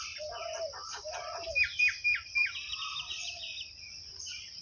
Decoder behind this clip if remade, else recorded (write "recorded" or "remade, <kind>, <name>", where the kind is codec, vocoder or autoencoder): remade, vocoder, BigVGAN v2